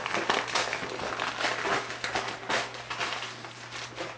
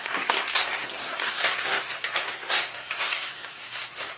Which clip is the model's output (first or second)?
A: second